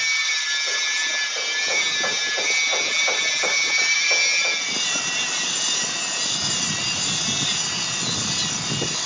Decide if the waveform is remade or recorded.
recorded